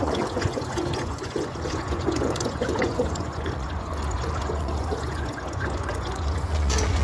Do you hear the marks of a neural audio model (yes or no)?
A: yes